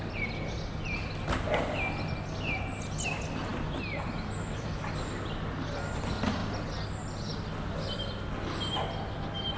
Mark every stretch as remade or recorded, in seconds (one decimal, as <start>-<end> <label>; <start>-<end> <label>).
0.0-9.6 recorded